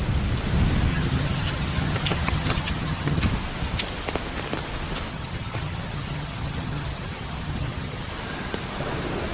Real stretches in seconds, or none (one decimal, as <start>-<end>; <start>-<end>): 0.0-0.9; 3.2-5.1; 8.1-9.3